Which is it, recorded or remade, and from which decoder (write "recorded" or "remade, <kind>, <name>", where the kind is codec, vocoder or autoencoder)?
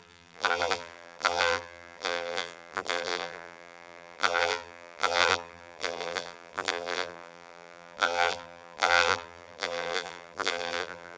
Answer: remade, vocoder, BigVGAN v2